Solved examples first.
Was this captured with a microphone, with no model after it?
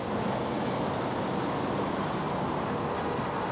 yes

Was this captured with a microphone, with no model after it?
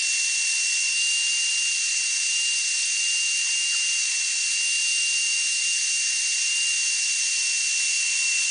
yes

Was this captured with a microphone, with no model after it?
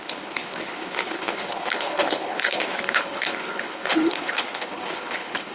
no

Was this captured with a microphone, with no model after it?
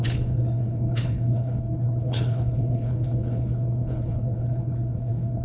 no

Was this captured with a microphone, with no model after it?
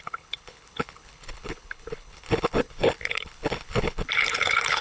no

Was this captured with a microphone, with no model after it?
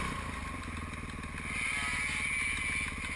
yes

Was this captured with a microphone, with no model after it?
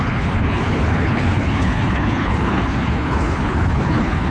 no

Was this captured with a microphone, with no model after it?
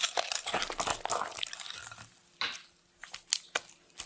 yes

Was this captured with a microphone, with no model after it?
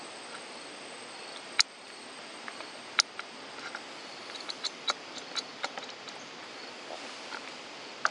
yes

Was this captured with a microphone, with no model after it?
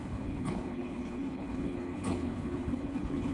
no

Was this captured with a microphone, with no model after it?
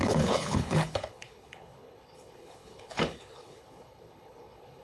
no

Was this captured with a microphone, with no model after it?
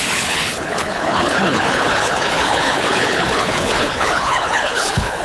no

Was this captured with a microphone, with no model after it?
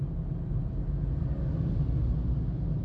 yes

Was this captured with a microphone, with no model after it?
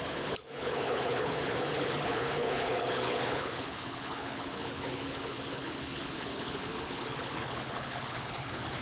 no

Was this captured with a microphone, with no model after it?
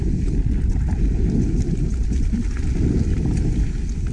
yes